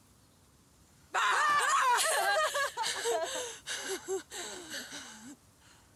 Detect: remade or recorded recorded